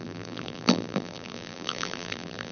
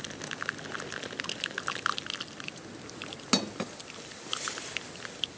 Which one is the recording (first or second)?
second